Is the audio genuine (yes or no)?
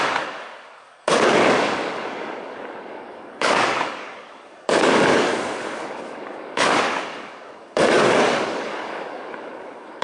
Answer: no